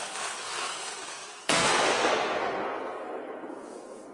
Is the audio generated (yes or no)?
yes